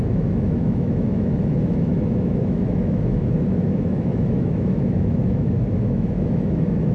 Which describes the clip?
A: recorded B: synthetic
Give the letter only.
B